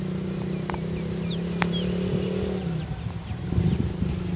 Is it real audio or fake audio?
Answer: real